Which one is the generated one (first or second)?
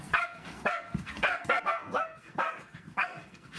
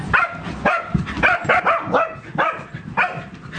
first